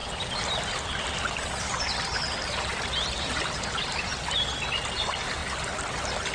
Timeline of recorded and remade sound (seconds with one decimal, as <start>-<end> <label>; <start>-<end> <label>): 0.0-6.3 recorded